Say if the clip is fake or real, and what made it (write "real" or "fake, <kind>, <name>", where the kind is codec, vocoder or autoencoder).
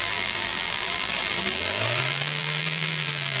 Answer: fake, vocoder, BigVGAN v2